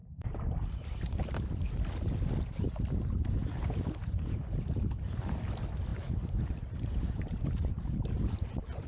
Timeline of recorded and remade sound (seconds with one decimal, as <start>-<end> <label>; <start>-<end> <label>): 0.0-1.5 remade; 1.5-3.4 recorded; 3.4-5.2 remade; 5.2-5.9 recorded; 5.9-7.6 remade; 7.6-8.9 recorded